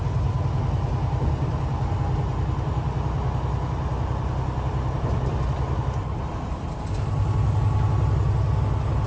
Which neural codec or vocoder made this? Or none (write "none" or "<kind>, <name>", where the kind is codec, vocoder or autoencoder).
none